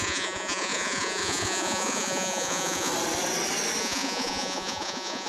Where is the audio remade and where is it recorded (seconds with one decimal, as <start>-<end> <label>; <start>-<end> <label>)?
0.0-2.9 remade; 2.9-3.8 recorded; 3.8-5.3 remade